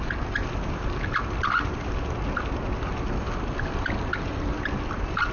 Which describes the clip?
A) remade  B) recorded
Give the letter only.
B